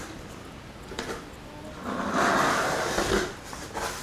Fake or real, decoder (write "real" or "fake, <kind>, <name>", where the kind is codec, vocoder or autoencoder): real